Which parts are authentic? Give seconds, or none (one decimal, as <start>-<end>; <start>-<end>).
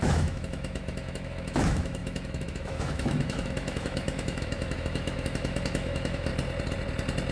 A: 6.3-7.3